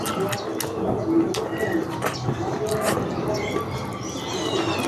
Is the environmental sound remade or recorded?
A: recorded